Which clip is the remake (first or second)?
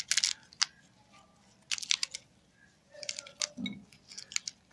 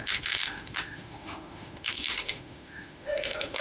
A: second